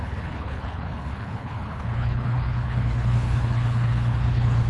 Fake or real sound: fake